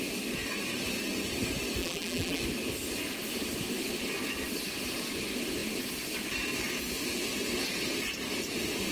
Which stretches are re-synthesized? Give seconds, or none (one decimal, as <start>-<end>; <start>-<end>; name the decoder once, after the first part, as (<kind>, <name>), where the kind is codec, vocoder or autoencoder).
1.8-2.4 (vocoder, BigVGAN v2)